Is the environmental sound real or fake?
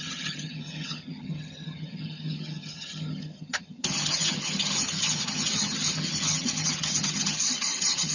fake